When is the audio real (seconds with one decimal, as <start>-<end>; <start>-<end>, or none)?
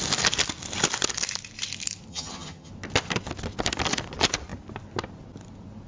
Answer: 0.0-2.1; 2.7-5.9